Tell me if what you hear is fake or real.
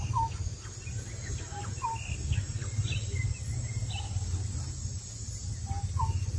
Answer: real